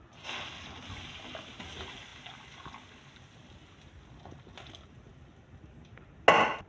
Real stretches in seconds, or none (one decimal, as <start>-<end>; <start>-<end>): 0.0-6.7